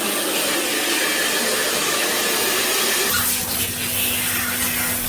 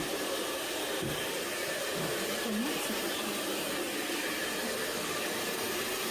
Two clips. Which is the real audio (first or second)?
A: first